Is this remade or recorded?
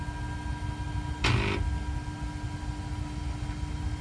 recorded